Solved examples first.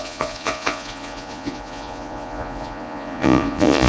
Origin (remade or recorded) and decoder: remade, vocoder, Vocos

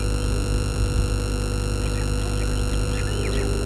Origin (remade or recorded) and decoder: recorded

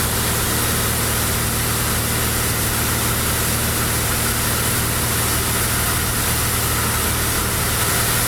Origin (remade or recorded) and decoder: recorded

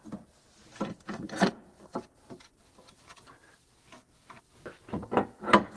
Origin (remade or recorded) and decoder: recorded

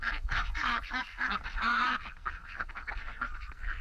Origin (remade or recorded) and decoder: remade, codec, SNAC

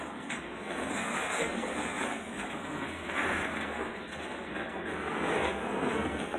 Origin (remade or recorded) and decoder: remade, codec, SNAC